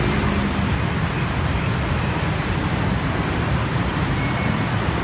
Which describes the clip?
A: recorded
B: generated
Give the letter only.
A